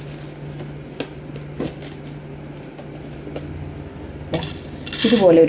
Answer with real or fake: real